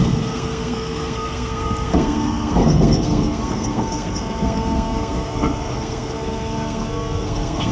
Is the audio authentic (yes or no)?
no